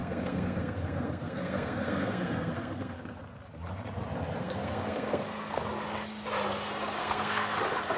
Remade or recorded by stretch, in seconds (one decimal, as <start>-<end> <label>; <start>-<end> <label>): 0.0-3.2 remade; 3.2-4.4 recorded; 4.4-5.6 remade; 5.6-7.0 recorded; 7.0-7.6 remade; 7.6-8.0 recorded